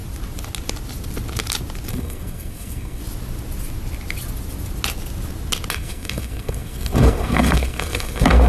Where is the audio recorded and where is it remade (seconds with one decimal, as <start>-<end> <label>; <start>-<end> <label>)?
0.0-1.9 recorded; 1.9-3.0 remade; 3.0-5.7 recorded; 5.7-8.5 remade